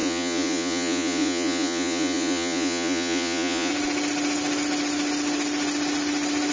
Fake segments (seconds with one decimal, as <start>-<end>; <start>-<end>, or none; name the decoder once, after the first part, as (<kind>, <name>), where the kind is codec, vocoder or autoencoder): 0.0-3.7 (vocoder, Vocos)